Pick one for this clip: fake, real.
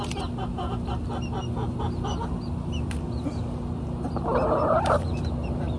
real